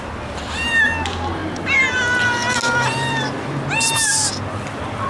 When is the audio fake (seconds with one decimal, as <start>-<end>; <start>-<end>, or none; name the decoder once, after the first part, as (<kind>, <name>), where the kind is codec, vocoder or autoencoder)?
none